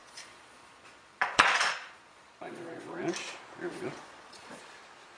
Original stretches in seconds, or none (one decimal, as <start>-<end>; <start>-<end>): 3.1-3.7; 4.6-5.2

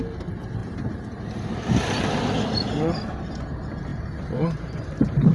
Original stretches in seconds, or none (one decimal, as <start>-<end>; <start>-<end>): 0.0-0.6; 2.2-3.9

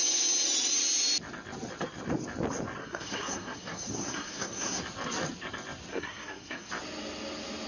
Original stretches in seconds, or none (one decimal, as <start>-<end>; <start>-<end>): 0.0-2.8; 4.8-5.9; 6.7-7.7

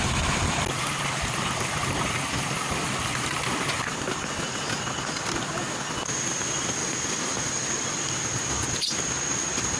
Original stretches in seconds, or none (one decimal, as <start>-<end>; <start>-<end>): 0.0-6.8; 7.7-9.8

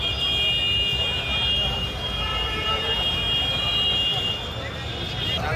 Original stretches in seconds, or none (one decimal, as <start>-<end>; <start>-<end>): 0.0-0.9; 4.3-5.6

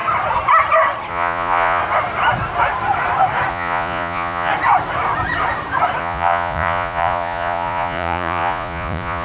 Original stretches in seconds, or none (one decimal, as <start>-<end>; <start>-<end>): 0.0-1.1; 1.8-3.5; 4.5-6.0

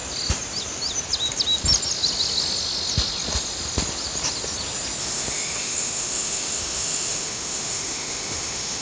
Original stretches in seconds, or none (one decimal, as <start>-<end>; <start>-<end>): 0.0-5.0